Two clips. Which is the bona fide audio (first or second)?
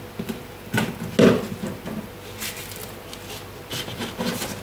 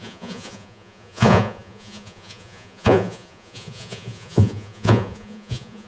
first